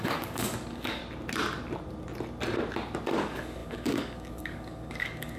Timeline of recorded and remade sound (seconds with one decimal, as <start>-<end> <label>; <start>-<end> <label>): 0.0-1.0 remade; 1.0-3.2 recorded; 3.2-5.4 remade

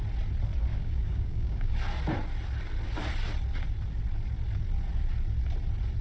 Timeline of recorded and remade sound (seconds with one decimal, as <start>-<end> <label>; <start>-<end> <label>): 0.0-0.7 recorded; 0.7-1.7 remade; 1.7-6.0 recorded

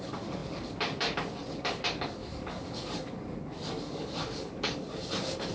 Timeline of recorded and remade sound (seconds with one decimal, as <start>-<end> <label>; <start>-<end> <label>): 0.0-5.5 remade

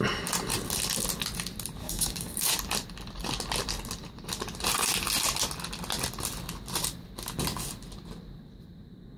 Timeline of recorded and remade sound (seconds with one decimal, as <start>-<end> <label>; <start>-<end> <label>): 0.0-1.8 recorded; 1.8-2.5 remade; 2.5-9.2 recorded